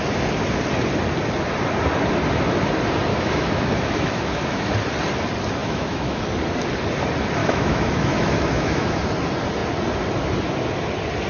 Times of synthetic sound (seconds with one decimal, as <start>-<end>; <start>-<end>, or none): 3.1-4.7; 5.6-6.2; 7.4-9.0